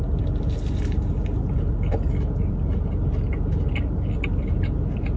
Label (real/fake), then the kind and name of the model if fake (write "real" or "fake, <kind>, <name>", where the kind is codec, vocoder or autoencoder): real